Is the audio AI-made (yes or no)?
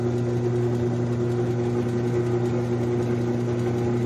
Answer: no